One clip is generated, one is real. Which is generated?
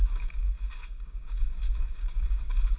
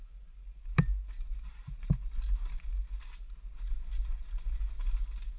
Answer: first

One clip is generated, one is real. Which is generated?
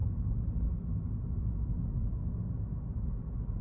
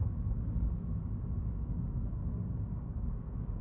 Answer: second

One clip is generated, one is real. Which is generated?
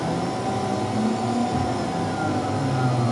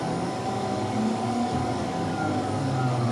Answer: second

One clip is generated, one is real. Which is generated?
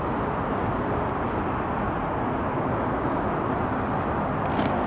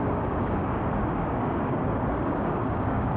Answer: second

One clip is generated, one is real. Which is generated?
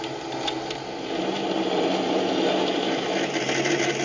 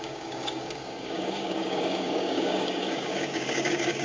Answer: second